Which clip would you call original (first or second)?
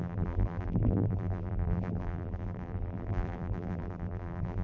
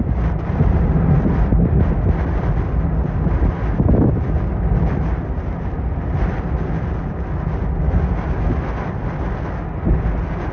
second